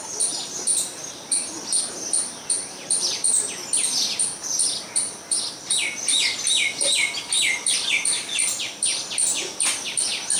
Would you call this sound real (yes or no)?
yes